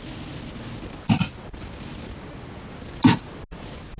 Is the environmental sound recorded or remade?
recorded